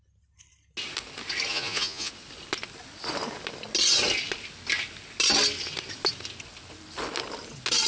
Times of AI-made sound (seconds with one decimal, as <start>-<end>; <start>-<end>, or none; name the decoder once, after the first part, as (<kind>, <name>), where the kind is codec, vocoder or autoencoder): 1.5-2.1 (vocoder, Vocos)